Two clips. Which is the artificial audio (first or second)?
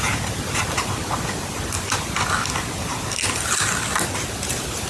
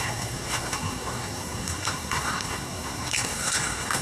second